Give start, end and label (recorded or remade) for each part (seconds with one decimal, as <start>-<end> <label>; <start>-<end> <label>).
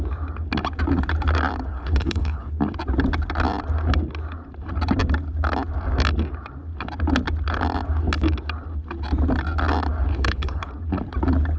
0.0-1.7 recorded; 1.7-2.5 remade; 2.5-10.1 recorded; 10.1-10.7 remade; 10.7-11.6 recorded